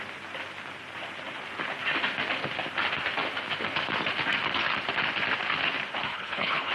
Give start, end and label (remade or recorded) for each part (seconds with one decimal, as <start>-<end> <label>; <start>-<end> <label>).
0.0-6.1 recorded; 6.1-6.7 remade